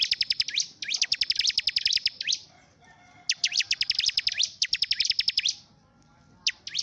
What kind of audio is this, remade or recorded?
recorded